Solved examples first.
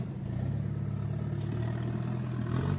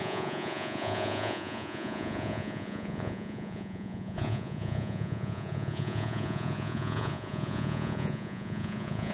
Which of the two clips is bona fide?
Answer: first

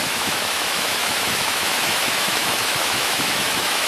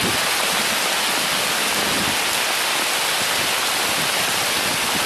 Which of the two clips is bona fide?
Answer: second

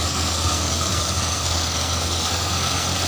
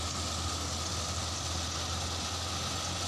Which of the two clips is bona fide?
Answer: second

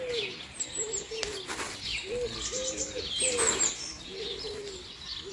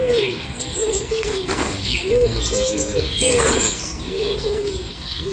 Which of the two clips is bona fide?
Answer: first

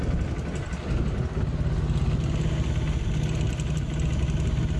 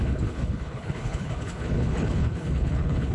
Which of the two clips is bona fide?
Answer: first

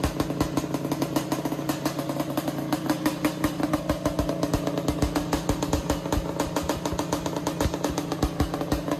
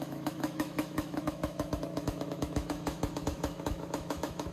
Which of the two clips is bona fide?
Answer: first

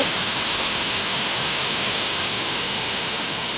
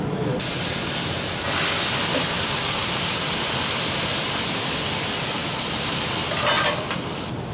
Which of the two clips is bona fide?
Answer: second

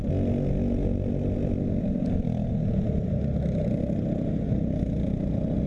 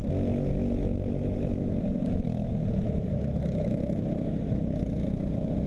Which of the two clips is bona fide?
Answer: first